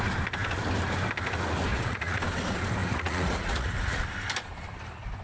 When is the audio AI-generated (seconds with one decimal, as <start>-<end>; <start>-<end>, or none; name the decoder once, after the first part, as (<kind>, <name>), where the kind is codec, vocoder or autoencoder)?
1.7-2.2 (vocoder, Vocos); 2.8-4.0